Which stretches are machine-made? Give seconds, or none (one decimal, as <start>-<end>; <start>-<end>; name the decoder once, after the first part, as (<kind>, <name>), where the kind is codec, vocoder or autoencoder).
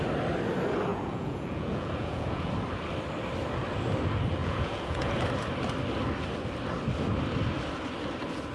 0.9-2.5 (vocoder, Vocos); 4.4-5.1